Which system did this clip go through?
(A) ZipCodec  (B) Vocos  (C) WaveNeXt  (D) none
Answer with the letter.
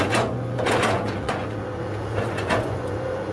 B